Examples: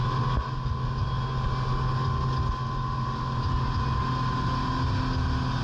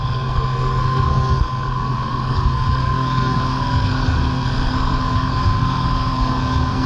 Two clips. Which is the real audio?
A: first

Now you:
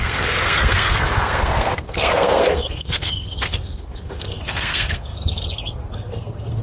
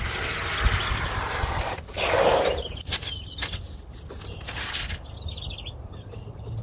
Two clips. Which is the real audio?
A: second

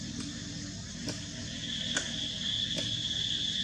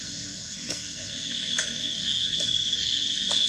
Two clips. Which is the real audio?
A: first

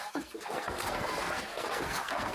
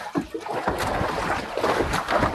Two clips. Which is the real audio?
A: second